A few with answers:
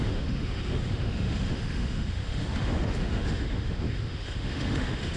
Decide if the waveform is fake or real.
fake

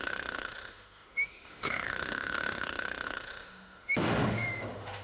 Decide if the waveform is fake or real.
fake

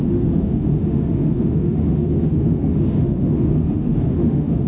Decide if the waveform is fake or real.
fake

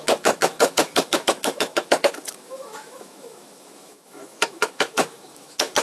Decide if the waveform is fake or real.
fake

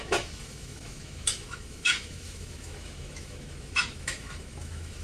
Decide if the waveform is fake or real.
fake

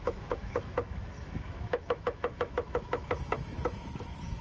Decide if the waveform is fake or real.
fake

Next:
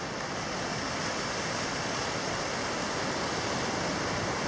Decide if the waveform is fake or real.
real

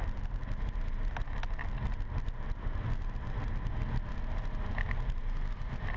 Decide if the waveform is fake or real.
real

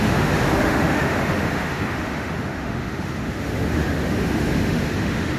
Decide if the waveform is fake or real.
fake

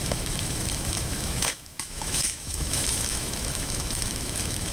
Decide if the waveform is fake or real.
fake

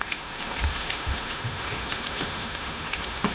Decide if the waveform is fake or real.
fake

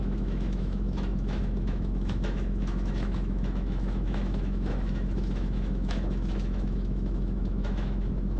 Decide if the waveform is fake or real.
fake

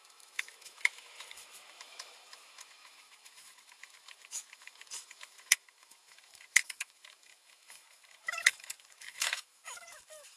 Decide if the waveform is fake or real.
fake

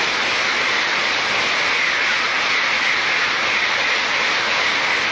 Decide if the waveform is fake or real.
real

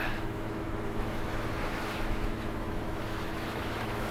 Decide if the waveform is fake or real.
fake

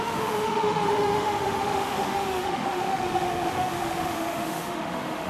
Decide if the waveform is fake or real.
fake